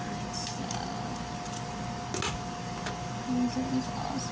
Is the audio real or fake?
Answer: real